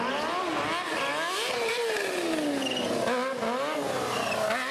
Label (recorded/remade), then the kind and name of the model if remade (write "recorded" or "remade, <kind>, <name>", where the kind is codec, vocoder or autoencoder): recorded